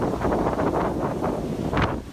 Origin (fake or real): real